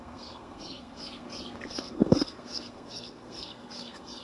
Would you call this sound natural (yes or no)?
no